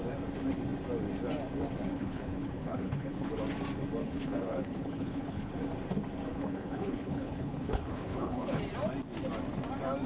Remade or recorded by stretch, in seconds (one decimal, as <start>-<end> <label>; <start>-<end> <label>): 0.0-1.9 recorded; 1.9-3.3 remade; 3.3-4.0 recorded; 4.0-5.5 remade; 5.5-6.3 recorded; 6.3-8.6 remade; 8.6-10.1 recorded